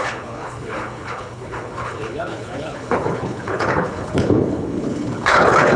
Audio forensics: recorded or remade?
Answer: remade